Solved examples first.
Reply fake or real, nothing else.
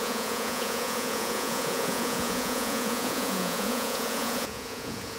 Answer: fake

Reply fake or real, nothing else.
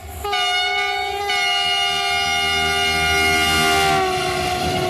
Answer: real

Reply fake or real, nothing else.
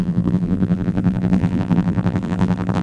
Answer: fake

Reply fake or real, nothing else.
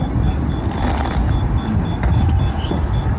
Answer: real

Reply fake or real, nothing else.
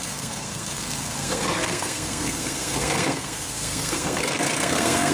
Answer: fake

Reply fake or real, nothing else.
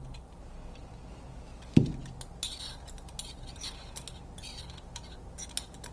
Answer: real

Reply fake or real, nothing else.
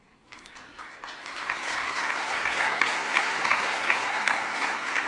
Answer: fake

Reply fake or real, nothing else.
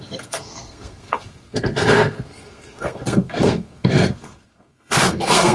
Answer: fake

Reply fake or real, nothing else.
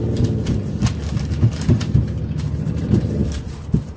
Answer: fake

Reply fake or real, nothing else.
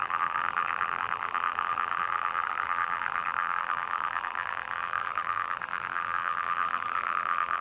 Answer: fake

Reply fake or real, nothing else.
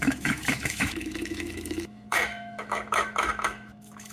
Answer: fake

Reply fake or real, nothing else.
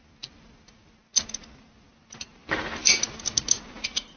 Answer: real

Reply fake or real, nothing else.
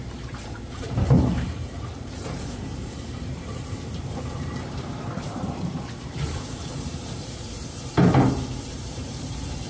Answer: fake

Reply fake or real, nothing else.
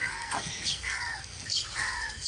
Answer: fake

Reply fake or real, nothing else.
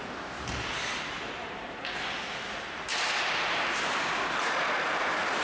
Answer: real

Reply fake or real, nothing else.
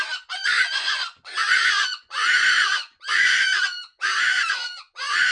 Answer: fake